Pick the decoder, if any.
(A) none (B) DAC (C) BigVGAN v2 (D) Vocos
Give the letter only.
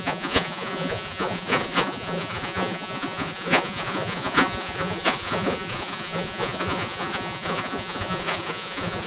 D